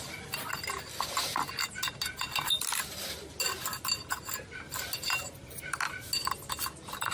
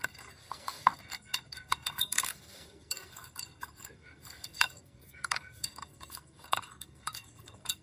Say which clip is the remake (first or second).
second